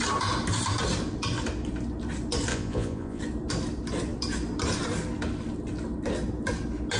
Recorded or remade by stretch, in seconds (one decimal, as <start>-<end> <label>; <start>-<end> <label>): 0.0-2.5 recorded; 2.5-3.2 remade; 3.2-7.0 recorded

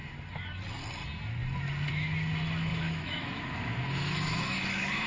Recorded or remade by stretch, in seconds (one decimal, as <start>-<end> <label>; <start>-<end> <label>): 0.0-2.7 recorded; 2.7-5.1 remade

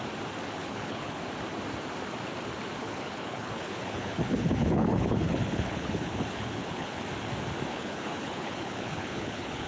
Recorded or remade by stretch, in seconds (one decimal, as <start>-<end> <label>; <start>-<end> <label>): 0.0-0.6 recorded; 0.6-1.2 remade; 1.2-2.8 recorded; 2.8-7.0 remade; 7.0-7.7 recorded; 7.7-9.7 remade

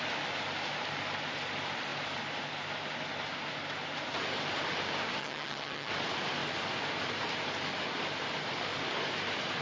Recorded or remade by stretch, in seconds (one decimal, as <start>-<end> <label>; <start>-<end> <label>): 0.0-5.2 recorded; 5.2-5.9 remade; 5.9-9.6 recorded

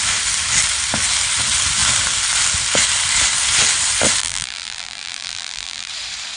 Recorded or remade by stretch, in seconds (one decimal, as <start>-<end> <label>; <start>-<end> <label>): 0.0-4.2 recorded; 4.2-5.9 remade; 5.9-6.4 recorded

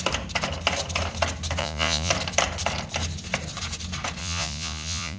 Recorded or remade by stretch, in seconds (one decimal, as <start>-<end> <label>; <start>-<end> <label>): 0.0-1.6 recorded; 1.6-2.1 remade; 2.1-4.2 recorded; 4.2-5.2 remade

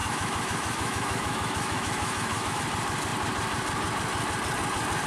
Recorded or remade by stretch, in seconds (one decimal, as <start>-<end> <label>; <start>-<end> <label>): 0.0-2.6 remade; 2.6-5.1 recorded

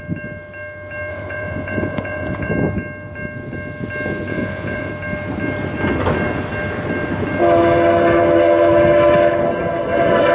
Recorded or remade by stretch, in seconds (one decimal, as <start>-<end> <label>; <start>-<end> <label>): 0.0-1.1 recorded; 1.1-2.5 remade; 2.5-4.3 recorded; 4.3-4.9 remade; 4.9-10.3 recorded